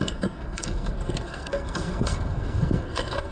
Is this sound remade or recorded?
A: remade